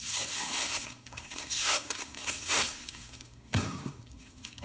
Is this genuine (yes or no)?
no